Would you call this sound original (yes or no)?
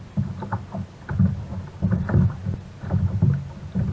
yes